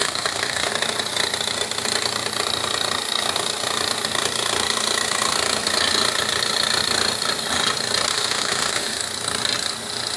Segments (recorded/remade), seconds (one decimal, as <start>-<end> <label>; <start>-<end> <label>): 0.0-0.7 remade; 0.7-8.1 recorded; 8.1-9.0 remade; 9.0-10.2 recorded

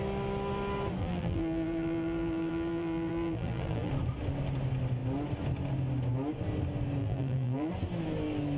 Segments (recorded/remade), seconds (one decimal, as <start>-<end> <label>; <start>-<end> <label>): 0.0-1.0 recorded; 1.0-3.9 remade; 3.9-7.0 recorded; 7.0-7.7 remade; 7.7-8.6 recorded

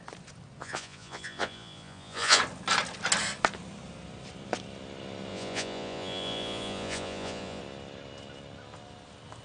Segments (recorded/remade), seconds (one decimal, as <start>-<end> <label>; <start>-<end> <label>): 0.0-0.6 recorded; 0.6-2.4 remade; 2.4-5.3 recorded; 5.3-7.6 remade; 7.6-9.4 recorded

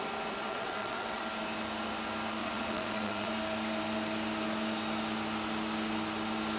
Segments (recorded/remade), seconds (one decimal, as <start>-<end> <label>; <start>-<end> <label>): 0.0-0.4 recorded; 0.4-1.2 remade; 1.2-2.4 recorded; 2.4-3.3 remade; 3.3-6.6 recorded

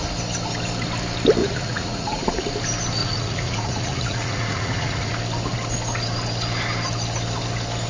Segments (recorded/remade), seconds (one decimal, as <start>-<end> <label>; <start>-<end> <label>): 0.0-1.4 recorded; 1.4-2.4 remade; 2.4-3.0 recorded; 3.0-5.1 remade; 5.1-7.9 recorded

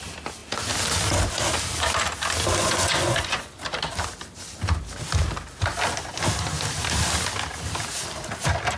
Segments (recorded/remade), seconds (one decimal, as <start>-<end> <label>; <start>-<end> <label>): 0.0-2.6 recorded; 2.6-3.6 remade; 3.6-8.8 recorded

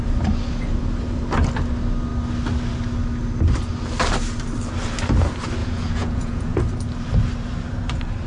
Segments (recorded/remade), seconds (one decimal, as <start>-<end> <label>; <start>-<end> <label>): 0.0-5.6 recorded; 5.6-6.6 remade; 6.6-8.3 recorded